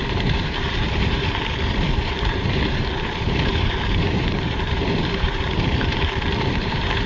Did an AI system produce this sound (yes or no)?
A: yes